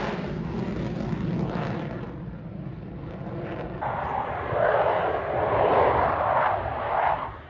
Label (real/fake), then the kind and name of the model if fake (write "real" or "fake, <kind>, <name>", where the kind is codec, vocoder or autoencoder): real